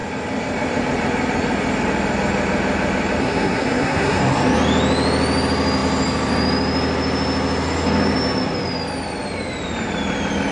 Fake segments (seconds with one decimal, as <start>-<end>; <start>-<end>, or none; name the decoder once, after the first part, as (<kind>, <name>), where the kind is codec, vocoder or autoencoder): 3.2-4.2 (codec, SNAC)